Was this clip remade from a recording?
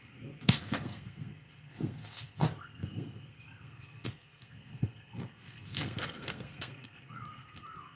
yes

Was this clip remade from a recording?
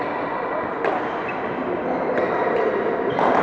no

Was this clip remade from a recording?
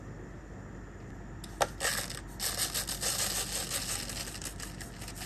no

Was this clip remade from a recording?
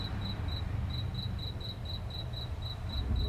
no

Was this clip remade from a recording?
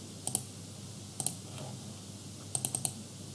no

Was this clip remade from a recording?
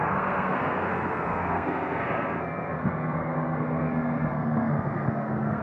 yes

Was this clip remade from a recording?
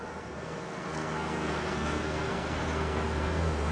yes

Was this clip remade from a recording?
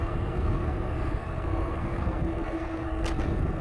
yes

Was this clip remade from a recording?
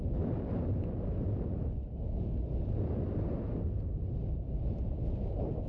no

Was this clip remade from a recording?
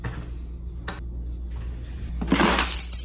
no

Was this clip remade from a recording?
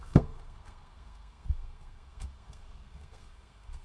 yes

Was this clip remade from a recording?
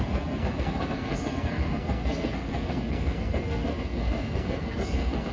yes